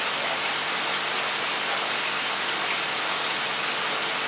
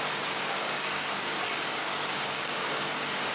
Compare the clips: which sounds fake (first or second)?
second